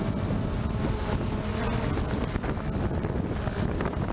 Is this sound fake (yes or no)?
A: no